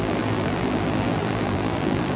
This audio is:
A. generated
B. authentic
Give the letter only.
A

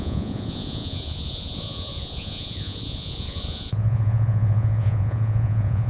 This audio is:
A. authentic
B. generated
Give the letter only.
B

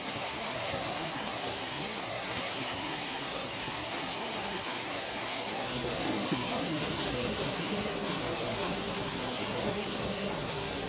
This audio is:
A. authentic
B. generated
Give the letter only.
B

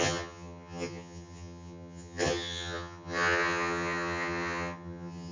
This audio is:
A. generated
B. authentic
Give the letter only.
A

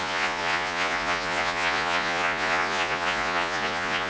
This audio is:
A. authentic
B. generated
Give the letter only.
B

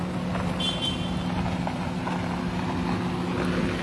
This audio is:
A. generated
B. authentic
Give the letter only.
B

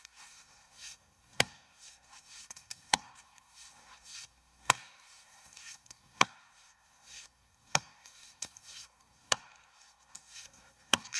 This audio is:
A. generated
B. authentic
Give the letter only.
A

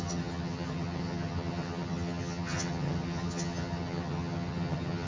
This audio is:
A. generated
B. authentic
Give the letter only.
A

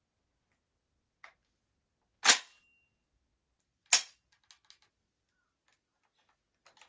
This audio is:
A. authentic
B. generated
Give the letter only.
A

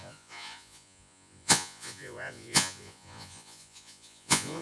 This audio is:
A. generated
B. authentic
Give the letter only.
A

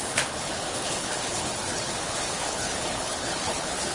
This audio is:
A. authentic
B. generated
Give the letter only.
B